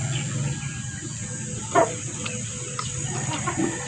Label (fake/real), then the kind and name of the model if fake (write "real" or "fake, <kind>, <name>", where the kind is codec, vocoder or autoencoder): real